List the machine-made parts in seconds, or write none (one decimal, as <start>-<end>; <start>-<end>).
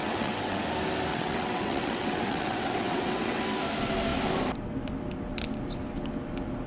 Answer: 0.0-0.6; 1.1-3.4